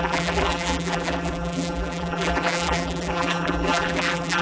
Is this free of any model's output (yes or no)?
no